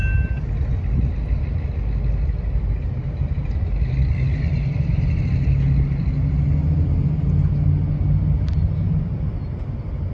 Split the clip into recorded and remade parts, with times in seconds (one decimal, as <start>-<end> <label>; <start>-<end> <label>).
0.0-10.1 recorded